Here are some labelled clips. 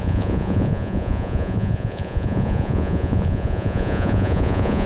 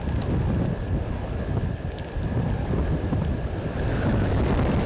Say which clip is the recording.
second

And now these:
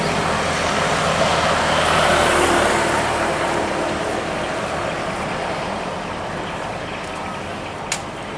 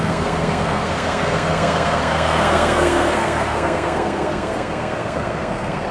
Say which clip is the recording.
first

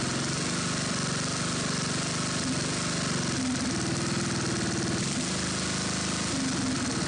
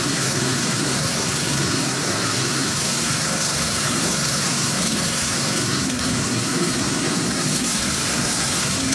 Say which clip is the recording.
first